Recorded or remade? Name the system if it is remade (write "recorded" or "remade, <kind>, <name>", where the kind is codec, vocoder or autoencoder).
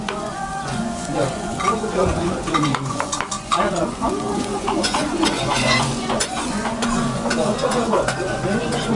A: remade, vocoder, Vocos